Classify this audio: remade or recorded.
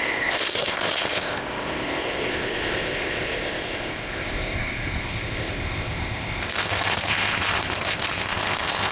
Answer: remade